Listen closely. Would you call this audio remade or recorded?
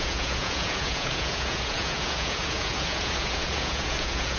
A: remade